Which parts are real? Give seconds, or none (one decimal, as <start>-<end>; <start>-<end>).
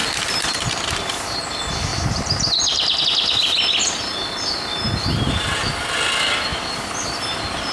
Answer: 1.4-1.9; 3.0-7.7